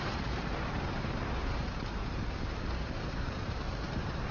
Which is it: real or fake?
fake